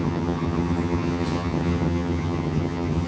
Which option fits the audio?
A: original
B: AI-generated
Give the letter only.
B